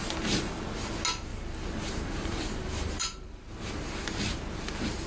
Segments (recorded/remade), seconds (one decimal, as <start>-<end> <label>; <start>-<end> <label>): 0.0-1.3 recorded; 1.3-3.4 remade; 3.4-5.1 recorded